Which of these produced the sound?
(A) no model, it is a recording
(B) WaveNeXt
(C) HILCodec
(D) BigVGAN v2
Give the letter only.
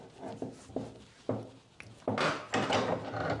A